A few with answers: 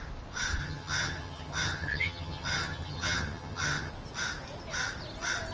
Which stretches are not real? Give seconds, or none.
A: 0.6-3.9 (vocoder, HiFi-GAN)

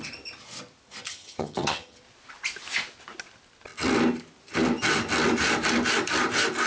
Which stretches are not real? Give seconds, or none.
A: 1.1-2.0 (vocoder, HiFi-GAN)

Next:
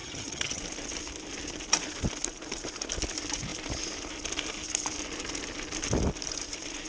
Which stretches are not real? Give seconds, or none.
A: 0.0-0.6 (vocoder, HiFi-GAN)

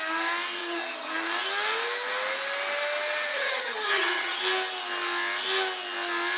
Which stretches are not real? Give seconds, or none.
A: 0.6-1.1 (vocoder, HiFi-GAN); 3.3-4.4

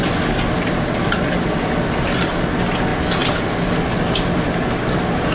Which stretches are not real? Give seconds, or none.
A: none

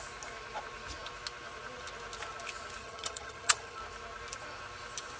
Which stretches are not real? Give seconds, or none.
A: 2.8-3.8 (vocoder, HiFi-GAN)

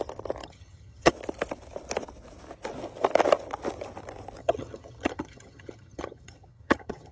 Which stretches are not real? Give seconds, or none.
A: 0.4-1.1 (vocoder, HiFi-GAN); 4.4-7.1

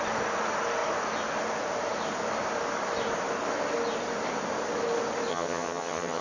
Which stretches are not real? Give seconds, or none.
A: 5.3-6.2 (vocoder, HiFi-GAN)